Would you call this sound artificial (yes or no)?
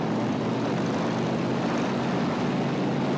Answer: no